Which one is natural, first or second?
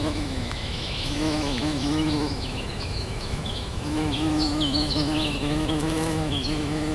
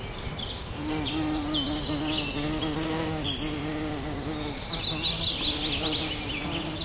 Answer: second